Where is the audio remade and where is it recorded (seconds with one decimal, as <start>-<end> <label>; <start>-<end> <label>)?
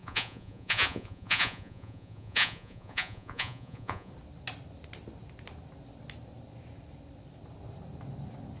0.0-4.1 remade; 4.1-8.6 recorded